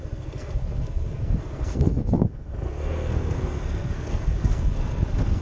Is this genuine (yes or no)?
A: no